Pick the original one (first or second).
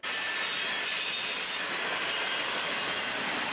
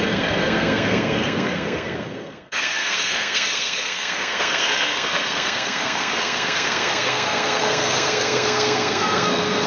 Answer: first